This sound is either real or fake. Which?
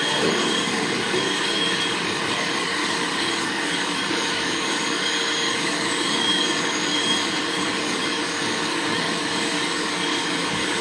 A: fake